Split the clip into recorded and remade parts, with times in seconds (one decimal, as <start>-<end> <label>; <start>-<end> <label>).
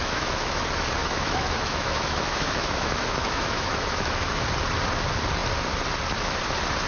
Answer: 0.0-0.6 remade; 0.6-1.0 recorded; 1.0-4.3 remade; 4.3-6.9 recorded